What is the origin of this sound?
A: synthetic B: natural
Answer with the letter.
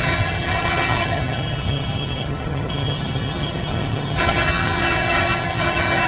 A